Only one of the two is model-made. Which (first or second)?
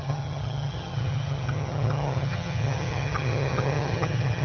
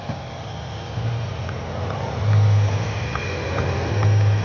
first